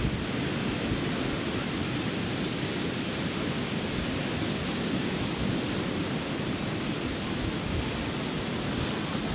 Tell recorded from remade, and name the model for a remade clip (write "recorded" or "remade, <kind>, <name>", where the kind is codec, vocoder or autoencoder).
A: recorded